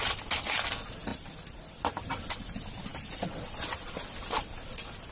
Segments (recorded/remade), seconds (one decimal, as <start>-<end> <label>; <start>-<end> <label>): 0.0-5.1 recorded